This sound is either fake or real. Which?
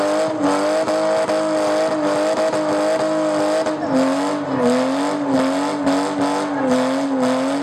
real